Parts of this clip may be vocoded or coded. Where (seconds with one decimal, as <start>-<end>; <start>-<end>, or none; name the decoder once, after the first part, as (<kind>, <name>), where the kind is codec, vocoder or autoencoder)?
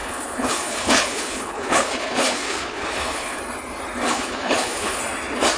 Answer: 0.0-3.4 (codec, HILCodec); 4.1-5.0